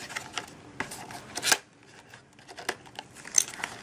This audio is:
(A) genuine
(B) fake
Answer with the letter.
A